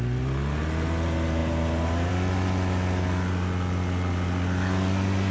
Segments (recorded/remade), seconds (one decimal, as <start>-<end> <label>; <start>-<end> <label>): 0.0-5.3 recorded